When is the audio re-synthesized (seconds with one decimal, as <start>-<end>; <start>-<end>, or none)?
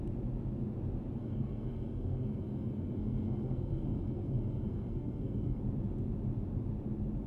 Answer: 1.2-5.6